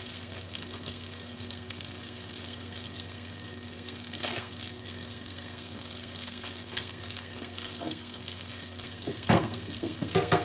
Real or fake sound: fake